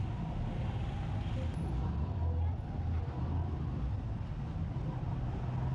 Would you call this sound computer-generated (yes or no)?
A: no